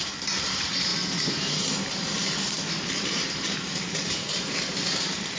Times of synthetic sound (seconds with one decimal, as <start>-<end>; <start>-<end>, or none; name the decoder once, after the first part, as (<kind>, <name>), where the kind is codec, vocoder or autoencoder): 0.0-0.9 (vocoder, BigVGAN v2); 1.7-5.4